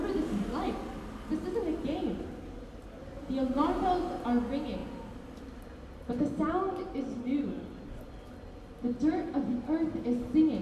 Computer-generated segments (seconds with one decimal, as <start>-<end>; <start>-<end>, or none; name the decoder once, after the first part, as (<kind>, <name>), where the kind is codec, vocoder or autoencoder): none